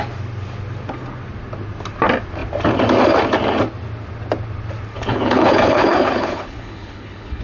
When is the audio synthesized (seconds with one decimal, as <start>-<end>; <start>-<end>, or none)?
4.9-7.4